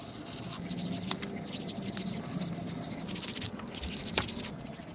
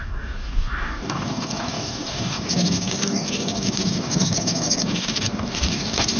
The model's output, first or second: second